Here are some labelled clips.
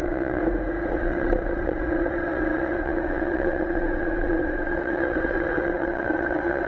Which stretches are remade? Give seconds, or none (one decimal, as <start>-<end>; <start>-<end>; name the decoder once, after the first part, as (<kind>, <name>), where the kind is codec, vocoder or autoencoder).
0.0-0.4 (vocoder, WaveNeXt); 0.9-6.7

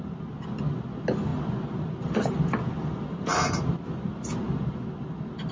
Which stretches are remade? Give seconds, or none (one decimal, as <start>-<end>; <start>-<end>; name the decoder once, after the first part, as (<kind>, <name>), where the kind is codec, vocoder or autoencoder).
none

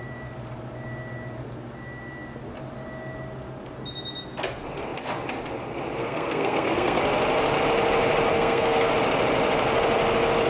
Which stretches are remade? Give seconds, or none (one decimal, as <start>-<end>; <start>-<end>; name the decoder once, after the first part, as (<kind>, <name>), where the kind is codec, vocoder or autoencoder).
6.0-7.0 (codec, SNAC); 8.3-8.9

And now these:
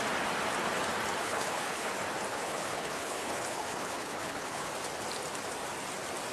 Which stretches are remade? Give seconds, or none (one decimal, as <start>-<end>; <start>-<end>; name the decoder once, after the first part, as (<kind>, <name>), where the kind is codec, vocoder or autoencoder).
1.2-1.9 (codec, HILCodec); 2.3-4.7

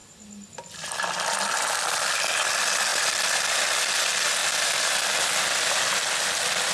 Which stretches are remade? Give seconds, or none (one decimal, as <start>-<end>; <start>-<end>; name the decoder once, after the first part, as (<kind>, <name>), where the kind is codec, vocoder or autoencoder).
2.9-3.6 (vocoder, BigVGAN v2); 4.4-5.0

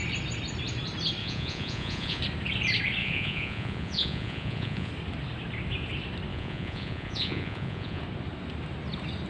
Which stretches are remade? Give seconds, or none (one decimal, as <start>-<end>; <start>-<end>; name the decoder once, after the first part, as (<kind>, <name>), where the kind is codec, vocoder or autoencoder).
1.2-2.2 (vocoder, Vocos); 3.0-4.9; 6.3-8.0

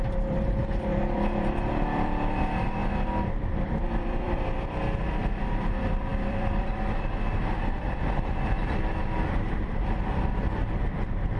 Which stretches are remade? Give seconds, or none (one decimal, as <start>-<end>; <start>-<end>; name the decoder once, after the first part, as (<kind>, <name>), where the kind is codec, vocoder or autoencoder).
0.0-2.8 (vocoder, BigVGAN v2); 3.5-11.4